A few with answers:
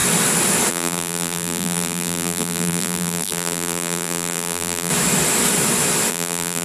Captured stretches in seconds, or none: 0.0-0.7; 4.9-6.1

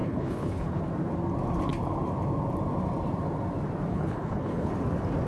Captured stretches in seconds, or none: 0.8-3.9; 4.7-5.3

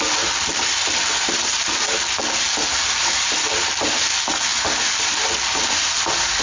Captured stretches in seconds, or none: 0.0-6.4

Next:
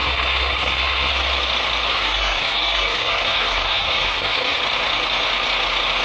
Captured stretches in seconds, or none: 1.1-1.9; 4.6-6.0